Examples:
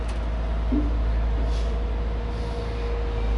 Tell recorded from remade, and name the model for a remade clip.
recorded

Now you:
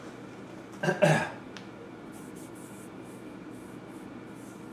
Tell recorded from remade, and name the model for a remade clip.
recorded